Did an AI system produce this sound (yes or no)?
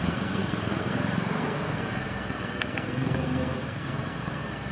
yes